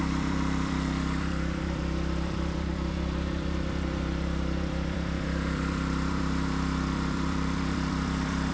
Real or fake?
fake